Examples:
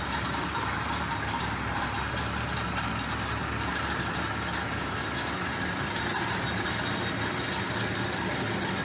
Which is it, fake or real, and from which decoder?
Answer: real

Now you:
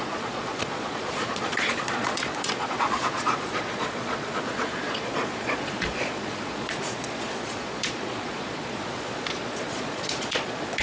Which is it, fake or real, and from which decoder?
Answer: fake, vocoder, Vocos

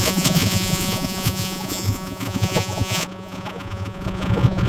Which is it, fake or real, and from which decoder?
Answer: fake, vocoder, Vocos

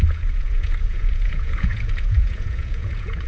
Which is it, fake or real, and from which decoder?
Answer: fake, vocoder, Vocos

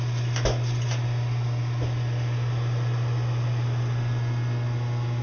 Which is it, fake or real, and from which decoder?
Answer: real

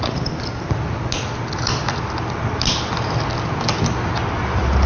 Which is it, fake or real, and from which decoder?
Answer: real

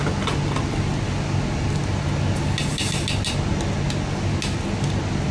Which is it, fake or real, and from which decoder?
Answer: real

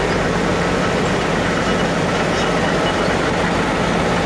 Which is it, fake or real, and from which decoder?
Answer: real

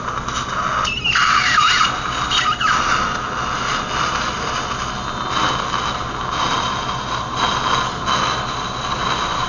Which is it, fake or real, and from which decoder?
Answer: real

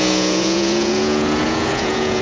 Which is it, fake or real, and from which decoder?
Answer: fake, vocoder, Vocos